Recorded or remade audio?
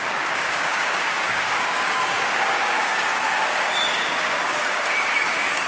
remade